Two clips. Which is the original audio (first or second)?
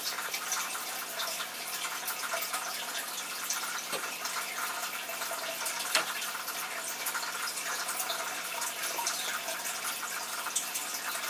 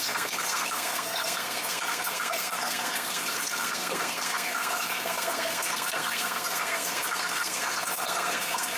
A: first